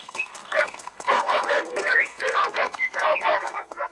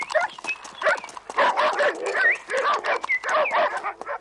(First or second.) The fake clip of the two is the first